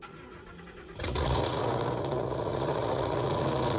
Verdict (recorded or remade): remade